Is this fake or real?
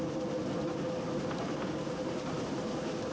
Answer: real